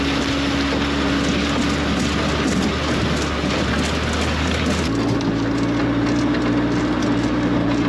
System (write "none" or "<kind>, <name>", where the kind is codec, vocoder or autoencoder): none